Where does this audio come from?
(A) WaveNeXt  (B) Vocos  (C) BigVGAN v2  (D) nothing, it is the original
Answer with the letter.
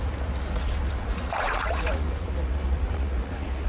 B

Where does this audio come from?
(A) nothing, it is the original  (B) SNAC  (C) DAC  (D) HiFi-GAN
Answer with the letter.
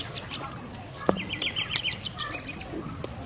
A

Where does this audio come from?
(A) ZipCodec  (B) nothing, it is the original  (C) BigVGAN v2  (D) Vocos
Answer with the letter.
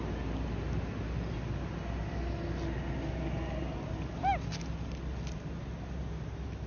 B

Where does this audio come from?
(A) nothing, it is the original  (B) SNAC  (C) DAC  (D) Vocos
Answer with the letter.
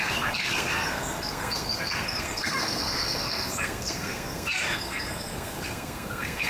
B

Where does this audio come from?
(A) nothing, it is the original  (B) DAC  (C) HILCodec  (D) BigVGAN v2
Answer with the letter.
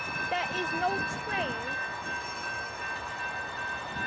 A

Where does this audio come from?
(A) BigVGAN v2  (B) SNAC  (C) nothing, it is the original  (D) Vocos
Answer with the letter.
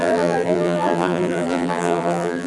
A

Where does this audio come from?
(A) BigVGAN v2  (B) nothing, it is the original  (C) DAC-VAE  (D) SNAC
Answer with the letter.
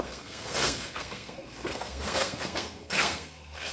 D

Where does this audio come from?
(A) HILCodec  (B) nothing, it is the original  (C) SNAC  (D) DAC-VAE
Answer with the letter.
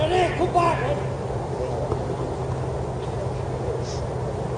B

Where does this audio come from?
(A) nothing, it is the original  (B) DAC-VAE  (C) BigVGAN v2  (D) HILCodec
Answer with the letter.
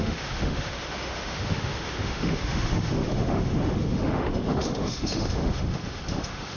B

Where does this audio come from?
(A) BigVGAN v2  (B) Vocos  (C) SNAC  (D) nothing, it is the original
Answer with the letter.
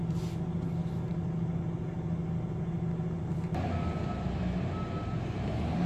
D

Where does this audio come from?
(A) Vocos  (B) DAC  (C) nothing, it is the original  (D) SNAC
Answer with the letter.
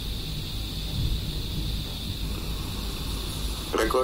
C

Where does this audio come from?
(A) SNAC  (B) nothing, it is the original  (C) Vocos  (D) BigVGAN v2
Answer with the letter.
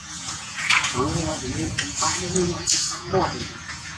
C